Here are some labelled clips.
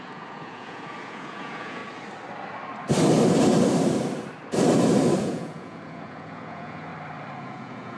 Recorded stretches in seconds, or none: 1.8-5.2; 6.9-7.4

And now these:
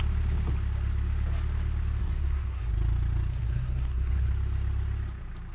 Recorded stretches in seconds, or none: 0.0-2.0; 2.7-3.3; 4.3-5.5

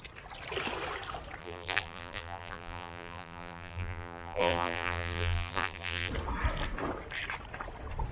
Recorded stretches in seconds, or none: 0.0-1.4; 6.1-8.1

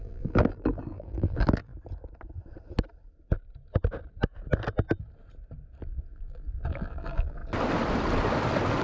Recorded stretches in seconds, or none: 1.7-5.8; 7.4-8.8

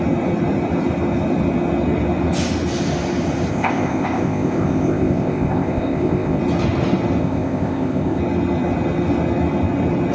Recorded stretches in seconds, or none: 0.0-3.5; 6.4-7.2; 8.2-10.1

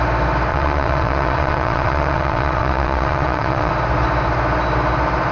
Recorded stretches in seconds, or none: 0.0-0.5; 3.7-5.3

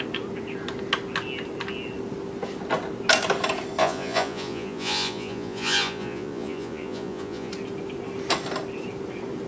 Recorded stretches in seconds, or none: 0.0-3.8; 7.5-9.5